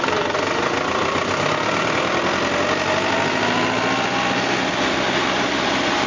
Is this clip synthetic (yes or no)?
no